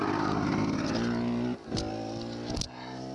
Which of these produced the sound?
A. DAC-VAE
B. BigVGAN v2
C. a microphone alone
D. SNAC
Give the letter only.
C